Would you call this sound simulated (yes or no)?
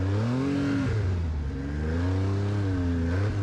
no